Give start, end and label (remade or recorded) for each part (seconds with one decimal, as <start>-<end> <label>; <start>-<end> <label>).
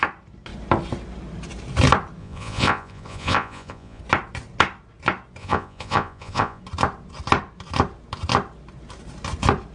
0.0-2.2 recorded; 2.2-4.0 remade; 4.0-5.4 recorded; 5.4-6.6 remade; 6.6-9.7 recorded